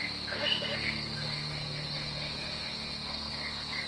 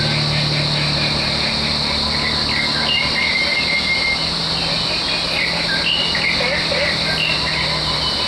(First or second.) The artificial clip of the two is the first